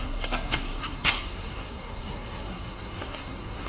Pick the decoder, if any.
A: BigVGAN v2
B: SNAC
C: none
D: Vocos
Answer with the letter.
B